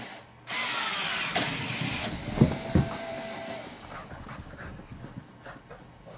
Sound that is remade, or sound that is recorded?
recorded